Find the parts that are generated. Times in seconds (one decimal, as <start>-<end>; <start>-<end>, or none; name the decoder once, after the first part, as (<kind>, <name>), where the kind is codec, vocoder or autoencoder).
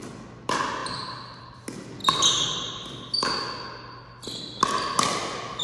none